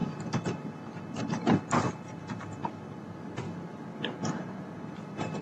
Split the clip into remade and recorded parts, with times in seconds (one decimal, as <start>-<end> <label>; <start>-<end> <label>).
0.0-5.4 recorded